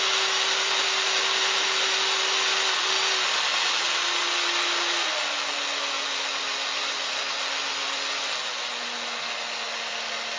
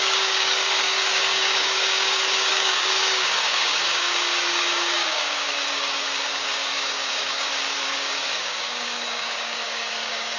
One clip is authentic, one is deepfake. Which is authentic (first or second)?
first